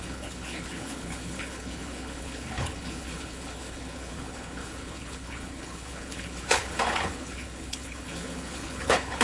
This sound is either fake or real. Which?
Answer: fake